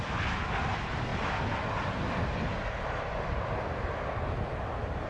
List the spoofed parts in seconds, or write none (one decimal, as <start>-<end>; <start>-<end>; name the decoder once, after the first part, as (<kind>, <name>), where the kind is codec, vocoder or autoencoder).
none